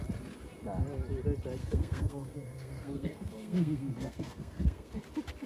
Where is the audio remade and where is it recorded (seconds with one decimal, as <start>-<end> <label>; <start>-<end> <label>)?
0.0-1.6 recorded; 1.6-4.9 remade; 4.9-5.5 recorded